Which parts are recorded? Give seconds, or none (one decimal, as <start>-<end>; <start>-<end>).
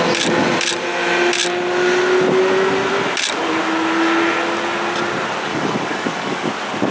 0.0-5.5; 6.5-6.9